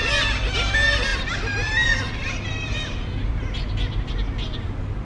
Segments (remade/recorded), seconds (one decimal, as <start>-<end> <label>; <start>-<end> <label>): 0.0-1.1 recorded; 1.1-4.1 remade; 4.1-5.0 recorded